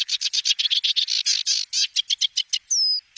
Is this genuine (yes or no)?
yes